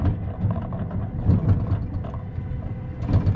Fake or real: real